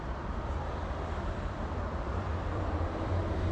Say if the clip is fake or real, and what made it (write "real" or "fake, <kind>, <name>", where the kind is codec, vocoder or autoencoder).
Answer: fake, vocoder, BigVGAN v2